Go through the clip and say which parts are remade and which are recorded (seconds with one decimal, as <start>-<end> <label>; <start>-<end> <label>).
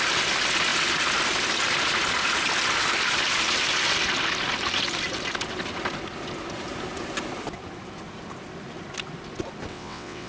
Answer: 0.0-9.7 recorded; 9.7-10.3 remade